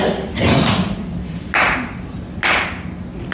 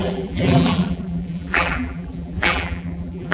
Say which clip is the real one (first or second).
first